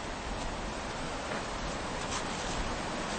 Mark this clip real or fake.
real